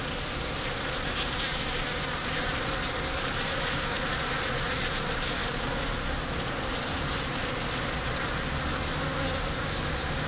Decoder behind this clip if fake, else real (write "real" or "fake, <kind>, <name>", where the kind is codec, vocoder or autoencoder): real